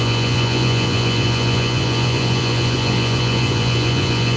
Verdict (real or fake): fake